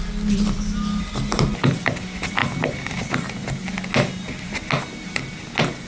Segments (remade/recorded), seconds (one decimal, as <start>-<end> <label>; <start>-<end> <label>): 0.0-5.9 recorded